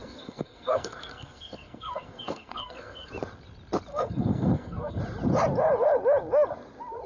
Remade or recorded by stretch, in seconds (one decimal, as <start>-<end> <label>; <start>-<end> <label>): 0.0-3.1 remade; 3.1-3.9 recorded; 3.9-5.0 remade; 5.0-7.1 recorded